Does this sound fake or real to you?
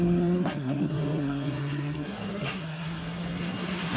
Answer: fake